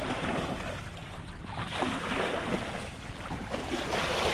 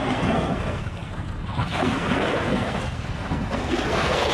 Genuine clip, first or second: first